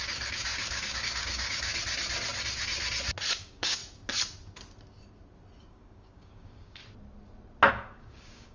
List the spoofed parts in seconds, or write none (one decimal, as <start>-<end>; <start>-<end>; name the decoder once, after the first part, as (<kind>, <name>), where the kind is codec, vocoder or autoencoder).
0.0-1.7 (codec, DAC); 3.4-3.8; 5.6-6.8; 7.7-8.5